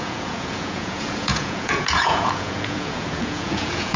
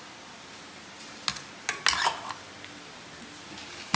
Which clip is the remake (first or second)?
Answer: first